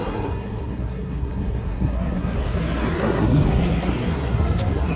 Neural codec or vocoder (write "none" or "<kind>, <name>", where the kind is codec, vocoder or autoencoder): codec, SNAC